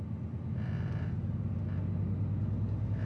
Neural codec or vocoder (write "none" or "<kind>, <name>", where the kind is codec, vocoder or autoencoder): none